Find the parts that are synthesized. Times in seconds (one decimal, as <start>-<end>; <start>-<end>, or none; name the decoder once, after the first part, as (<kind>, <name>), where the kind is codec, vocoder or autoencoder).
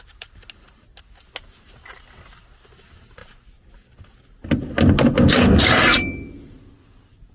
none